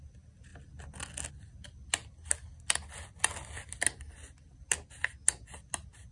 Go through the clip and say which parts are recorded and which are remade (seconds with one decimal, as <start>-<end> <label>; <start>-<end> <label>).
0.0-6.1 recorded